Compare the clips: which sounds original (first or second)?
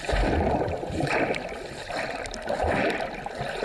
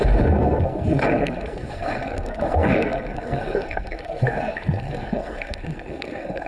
first